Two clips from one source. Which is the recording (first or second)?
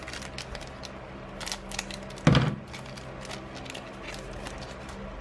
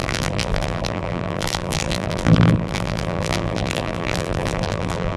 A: first